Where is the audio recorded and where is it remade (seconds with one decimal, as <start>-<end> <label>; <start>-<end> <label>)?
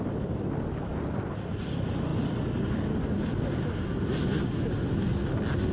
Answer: 0.0-5.7 recorded